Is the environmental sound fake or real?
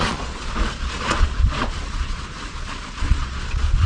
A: fake